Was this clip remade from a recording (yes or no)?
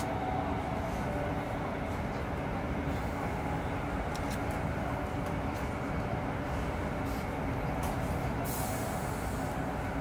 no